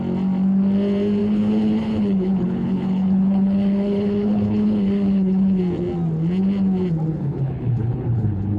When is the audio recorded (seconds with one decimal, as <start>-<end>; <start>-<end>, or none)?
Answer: 0.0-1.2; 5.6-7.1